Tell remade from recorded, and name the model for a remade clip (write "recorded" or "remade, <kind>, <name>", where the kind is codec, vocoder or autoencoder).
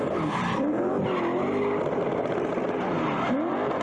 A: recorded